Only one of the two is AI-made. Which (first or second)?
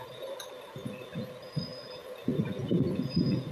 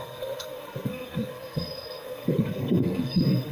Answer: second